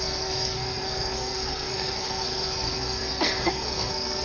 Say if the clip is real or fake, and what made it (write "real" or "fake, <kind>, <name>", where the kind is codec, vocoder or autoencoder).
fake, codec, SNAC